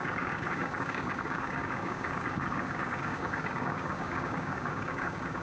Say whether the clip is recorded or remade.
remade